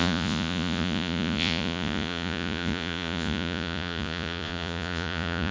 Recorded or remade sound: remade